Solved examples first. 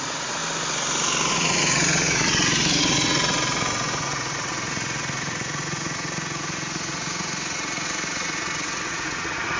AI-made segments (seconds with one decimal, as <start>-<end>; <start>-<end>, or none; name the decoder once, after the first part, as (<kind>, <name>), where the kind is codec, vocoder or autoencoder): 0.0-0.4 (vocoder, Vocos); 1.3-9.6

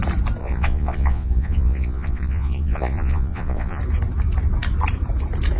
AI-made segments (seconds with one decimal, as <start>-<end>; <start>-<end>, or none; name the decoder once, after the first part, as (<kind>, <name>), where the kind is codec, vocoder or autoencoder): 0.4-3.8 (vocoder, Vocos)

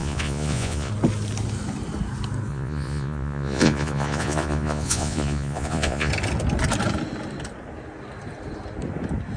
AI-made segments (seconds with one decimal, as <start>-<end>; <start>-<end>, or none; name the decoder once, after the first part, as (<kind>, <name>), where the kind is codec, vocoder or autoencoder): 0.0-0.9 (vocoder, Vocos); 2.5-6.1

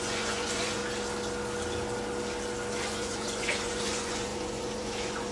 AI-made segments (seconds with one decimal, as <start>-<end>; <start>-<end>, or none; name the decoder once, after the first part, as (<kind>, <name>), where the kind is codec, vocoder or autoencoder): 0.0-0.8 (vocoder, Vocos); 2.8-5.3

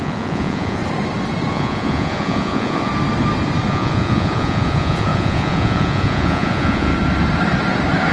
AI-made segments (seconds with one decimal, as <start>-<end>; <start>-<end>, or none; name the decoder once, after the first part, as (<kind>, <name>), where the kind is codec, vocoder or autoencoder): 0.0-0.8 (vocoder, Vocos); 1.5-2.9; 3.7-6.9

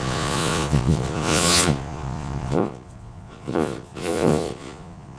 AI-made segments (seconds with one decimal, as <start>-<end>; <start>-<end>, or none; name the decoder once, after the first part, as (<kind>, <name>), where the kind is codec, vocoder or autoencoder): 0.0-5.2 (vocoder, Vocos)